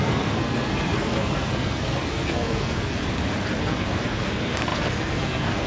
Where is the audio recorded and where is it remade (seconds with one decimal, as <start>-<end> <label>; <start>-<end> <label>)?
0.0-3.0 remade; 3.0-3.6 recorded; 3.6-5.7 remade